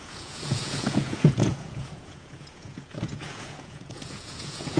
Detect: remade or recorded remade